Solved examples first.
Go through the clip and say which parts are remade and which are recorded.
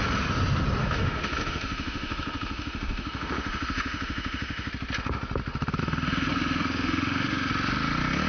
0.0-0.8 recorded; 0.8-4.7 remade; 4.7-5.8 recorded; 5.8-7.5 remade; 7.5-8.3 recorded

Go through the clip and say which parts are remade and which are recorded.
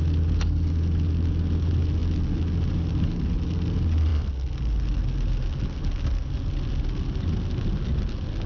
0.0-8.5 recorded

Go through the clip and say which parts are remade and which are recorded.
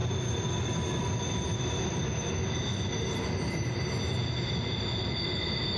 0.0-5.8 recorded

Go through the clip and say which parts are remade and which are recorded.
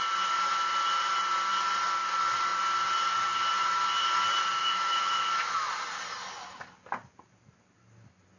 0.0-4.6 recorded; 4.6-5.7 remade; 5.7-8.4 recorded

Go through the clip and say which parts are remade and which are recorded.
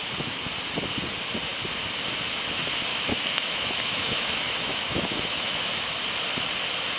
0.0-2.9 recorded; 2.9-5.9 remade; 5.9-7.0 recorded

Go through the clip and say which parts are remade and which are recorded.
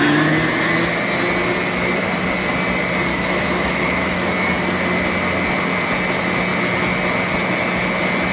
0.0-3.1 recorded; 3.1-4.5 remade; 4.5-8.3 recorded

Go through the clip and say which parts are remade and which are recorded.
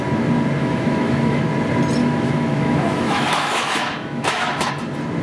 0.0-0.6 recorded; 0.6-1.4 remade; 1.4-2.0 recorded; 2.0-4.7 remade; 4.7-5.2 recorded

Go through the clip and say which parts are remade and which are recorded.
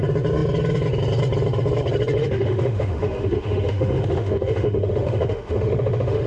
0.0-2.2 recorded; 2.2-6.3 remade